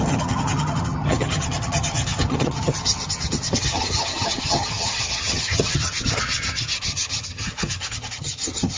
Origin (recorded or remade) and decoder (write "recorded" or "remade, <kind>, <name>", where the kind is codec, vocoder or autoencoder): remade, vocoder, HiFi-GAN